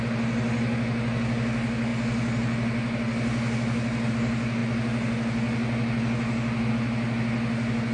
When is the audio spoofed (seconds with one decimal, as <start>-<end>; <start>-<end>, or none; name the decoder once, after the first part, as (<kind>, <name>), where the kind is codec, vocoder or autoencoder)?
none